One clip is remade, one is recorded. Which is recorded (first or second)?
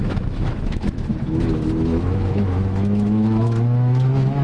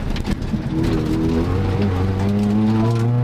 second